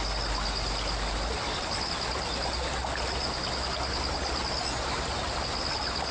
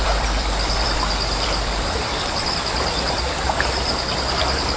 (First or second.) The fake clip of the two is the second